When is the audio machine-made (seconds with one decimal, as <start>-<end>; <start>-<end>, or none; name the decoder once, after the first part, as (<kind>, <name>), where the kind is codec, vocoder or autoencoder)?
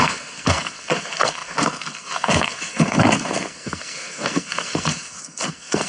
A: 0.0-5.9 (codec, SNAC)